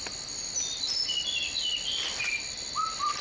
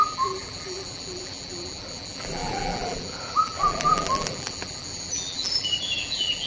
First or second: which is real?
first